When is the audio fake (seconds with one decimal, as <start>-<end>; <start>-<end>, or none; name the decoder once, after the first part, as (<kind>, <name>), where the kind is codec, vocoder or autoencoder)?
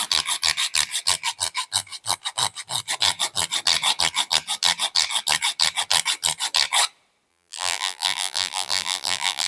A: 7.3-9.5 (vocoder, BigVGAN v2)